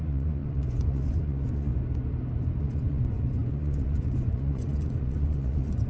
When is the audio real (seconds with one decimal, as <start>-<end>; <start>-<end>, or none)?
1.7-2.6